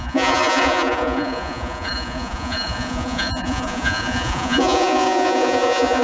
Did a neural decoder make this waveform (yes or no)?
yes